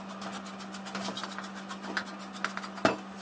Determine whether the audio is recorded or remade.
recorded